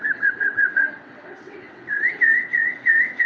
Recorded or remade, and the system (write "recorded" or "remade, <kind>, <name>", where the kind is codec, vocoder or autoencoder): remade, vocoder, WaveNeXt